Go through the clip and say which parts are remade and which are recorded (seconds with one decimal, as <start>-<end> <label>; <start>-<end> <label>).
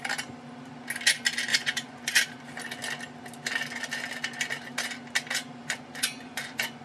0.0-1.5 recorded; 1.5-2.2 remade; 2.2-5.6 recorded; 5.6-6.8 remade